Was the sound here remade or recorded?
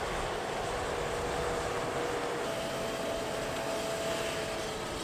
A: recorded